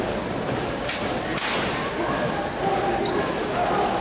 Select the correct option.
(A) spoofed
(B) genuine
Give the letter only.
B